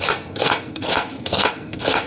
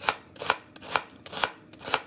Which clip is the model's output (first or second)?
first